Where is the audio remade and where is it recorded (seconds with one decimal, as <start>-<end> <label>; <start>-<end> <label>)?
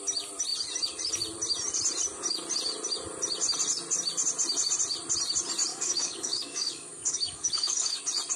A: 0.0-5.7 recorded; 5.7-8.0 remade; 8.0-8.4 recorded